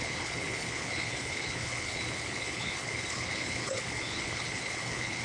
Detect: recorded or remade remade